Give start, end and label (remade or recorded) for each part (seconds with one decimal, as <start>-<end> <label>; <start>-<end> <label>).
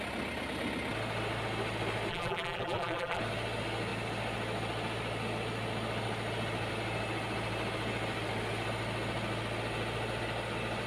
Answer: 0.0-2.1 recorded; 2.1-3.2 remade; 3.2-10.9 recorded